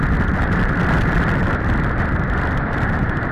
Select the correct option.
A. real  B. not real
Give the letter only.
B